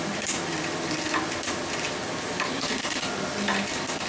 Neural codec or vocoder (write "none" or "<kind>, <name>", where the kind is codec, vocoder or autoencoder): none